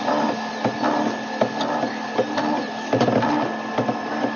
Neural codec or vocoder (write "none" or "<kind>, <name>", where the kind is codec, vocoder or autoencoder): none